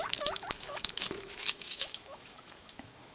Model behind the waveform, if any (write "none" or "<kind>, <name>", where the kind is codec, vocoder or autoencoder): autoencoder, DAC-VAE